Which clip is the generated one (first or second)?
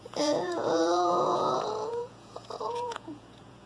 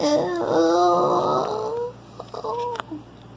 first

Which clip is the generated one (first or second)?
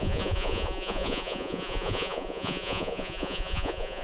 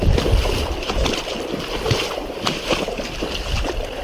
first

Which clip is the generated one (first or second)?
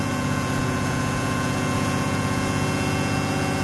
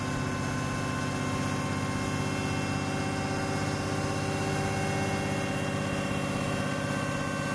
first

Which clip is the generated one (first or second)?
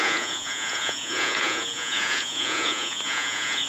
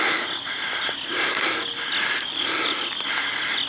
first